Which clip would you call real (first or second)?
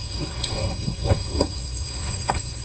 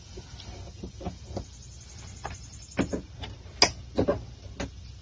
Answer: second